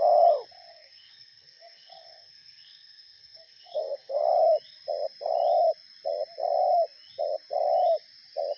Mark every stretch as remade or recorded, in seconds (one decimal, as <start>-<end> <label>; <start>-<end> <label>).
0.0-0.7 recorded; 0.7-4.2 remade; 4.2-8.6 recorded